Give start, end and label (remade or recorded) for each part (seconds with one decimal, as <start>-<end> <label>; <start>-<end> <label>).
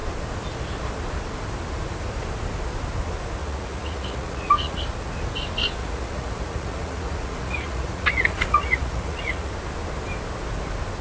0.0-3.4 recorded; 3.4-5.1 remade; 5.1-5.8 recorded; 5.8-9.5 remade; 9.5-11.0 recorded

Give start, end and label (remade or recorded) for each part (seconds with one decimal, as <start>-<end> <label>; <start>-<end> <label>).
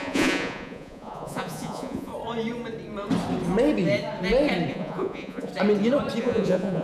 0.0-2.1 remade; 2.1-4.7 recorded; 4.7-5.5 remade; 5.5-6.2 recorded; 6.2-6.8 remade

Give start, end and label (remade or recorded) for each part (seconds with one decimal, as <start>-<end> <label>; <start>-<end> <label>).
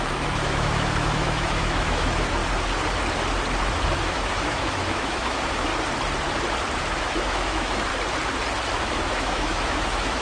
0.0-2.4 remade; 2.4-4.0 recorded; 4.0-5.7 remade; 5.7-7.0 recorded; 7.0-7.9 remade; 7.9-8.8 recorded; 8.8-10.2 remade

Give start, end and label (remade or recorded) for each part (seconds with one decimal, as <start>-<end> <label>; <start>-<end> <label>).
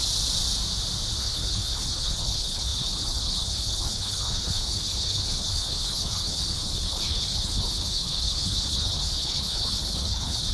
0.0-1.2 recorded; 1.2-10.5 remade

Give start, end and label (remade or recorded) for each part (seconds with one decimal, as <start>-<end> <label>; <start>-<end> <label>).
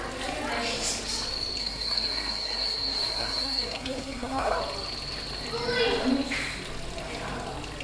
0.0-1.6 recorded; 1.6-4.6 remade; 4.6-7.8 recorded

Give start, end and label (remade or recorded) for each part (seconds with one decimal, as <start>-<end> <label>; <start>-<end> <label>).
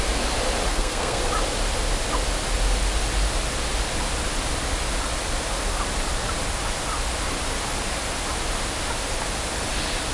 0.0-0.7 recorded; 0.7-1.2 remade; 1.2-10.1 recorded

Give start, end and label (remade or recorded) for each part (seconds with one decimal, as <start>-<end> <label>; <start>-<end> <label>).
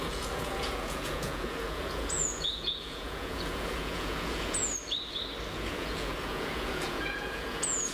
0.0-4.7 remade; 4.7-5.5 recorded; 5.5-7.9 remade